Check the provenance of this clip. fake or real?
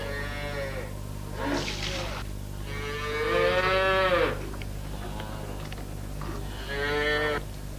real